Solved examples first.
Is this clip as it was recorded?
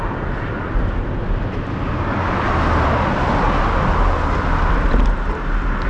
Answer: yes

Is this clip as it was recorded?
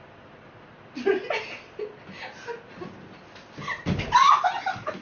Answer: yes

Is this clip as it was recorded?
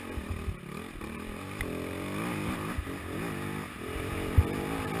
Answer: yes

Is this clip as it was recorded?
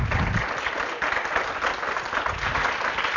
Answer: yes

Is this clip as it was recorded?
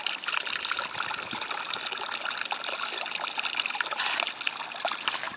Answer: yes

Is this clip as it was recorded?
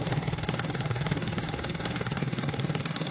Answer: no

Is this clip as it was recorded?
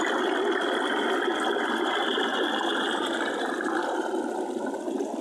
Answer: yes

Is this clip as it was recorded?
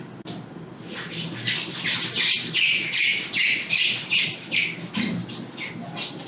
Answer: yes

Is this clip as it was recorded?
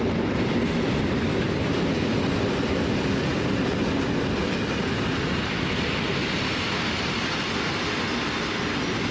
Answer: yes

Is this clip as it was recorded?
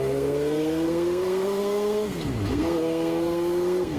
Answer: no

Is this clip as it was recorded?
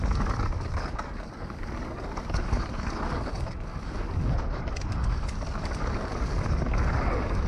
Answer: no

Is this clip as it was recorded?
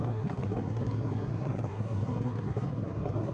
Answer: no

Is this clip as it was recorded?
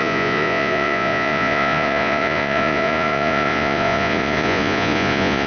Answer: no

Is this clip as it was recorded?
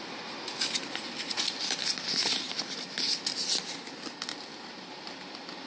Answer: yes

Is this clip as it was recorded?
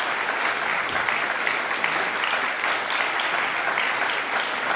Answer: yes